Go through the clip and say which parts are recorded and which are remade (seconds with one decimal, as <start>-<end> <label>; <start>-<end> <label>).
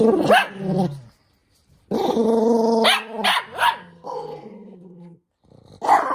0.0-3.8 recorded; 3.8-5.3 remade; 5.3-6.1 recorded